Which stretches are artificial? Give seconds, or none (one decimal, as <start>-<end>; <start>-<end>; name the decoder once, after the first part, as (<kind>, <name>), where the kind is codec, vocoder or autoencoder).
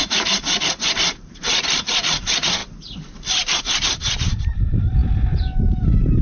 0.0-2.6 (vocoder, BigVGAN v2); 3.6-5.0; 5.7-6.2